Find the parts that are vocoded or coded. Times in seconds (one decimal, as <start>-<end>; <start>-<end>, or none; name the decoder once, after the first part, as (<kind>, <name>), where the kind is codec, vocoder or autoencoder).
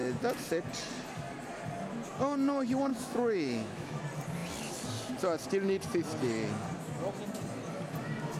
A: 2.9-4.0 (autoencoder, DAC-VAE)